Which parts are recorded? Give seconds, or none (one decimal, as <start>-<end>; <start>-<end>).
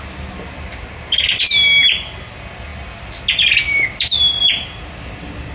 0.0-5.5